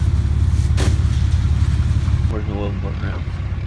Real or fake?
real